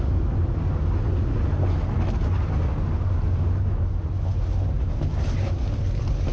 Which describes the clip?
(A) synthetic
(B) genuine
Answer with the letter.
B